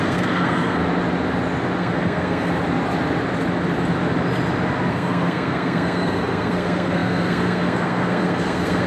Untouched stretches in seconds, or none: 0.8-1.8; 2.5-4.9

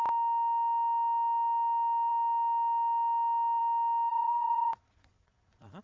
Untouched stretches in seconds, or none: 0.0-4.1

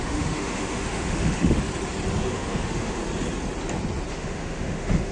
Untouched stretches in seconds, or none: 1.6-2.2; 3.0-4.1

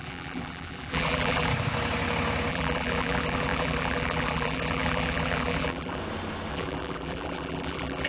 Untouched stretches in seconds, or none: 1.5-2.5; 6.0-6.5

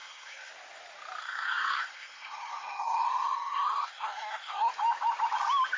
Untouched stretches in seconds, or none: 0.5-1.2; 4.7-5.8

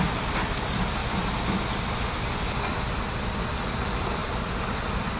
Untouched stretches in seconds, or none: 1.0-2.4; 4.2-5.2